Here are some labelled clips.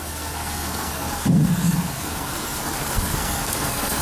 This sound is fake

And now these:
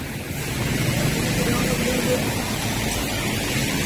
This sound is real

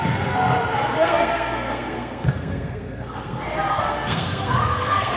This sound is fake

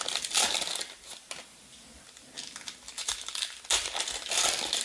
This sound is real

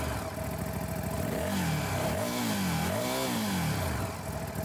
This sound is real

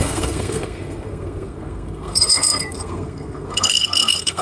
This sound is fake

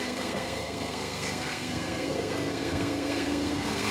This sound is fake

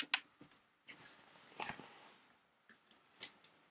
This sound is real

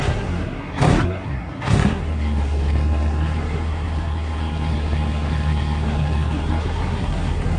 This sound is fake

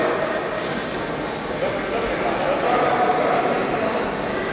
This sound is real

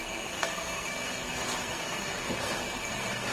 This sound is fake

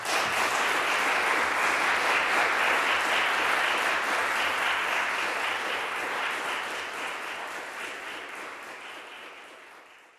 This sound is real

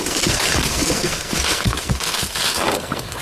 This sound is fake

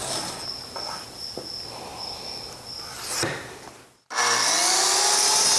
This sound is real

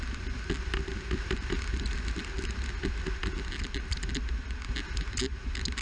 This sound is real